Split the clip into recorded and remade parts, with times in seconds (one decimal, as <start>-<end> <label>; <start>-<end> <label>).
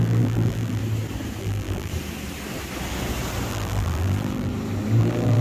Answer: 0.0-0.8 remade; 0.8-1.4 recorded; 1.4-1.9 remade; 1.9-3.5 recorded; 3.5-4.5 remade; 4.5-5.0 recorded; 5.0-5.4 remade